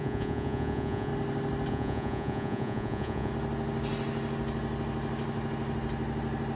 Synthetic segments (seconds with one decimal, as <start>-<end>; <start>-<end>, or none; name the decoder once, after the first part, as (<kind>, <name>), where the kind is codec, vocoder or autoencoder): 0.0-1.1 (vocoder, Vocos); 1.7-3.3